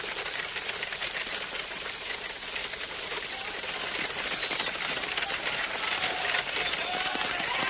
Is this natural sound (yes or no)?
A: yes